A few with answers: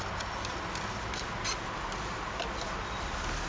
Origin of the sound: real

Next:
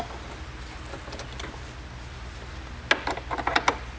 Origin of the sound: real